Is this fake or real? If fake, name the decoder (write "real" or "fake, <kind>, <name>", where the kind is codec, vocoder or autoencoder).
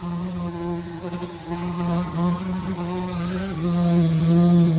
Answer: fake, vocoder, HiFi-GAN